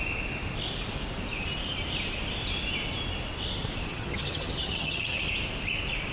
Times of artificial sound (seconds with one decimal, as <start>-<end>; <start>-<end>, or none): 3.9-5.2